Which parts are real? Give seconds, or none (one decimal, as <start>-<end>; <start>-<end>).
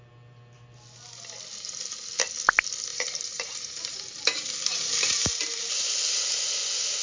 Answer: 0.0-2.9; 5.7-7.0